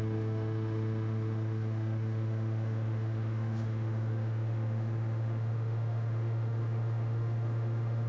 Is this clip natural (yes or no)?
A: no